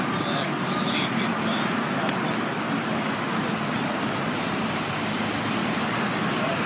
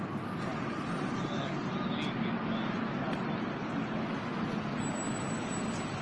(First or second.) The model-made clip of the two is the first